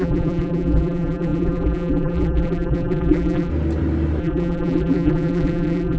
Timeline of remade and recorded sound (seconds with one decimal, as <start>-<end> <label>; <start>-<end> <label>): 0.0-3.5 remade; 3.5-4.2 recorded; 4.2-6.0 remade